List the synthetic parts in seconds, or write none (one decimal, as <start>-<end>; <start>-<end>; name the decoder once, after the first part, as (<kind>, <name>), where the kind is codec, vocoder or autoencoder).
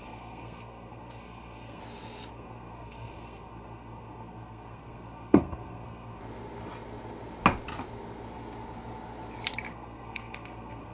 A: 0.0-1.8 (codec, SNAC); 2.3-6.2; 9.7-10.9